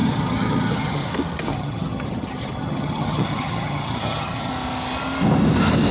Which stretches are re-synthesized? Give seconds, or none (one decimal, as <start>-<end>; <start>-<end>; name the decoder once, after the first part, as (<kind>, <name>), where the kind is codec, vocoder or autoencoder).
0.0-1.1 (vocoder, HiFi-GAN); 1.5-4.5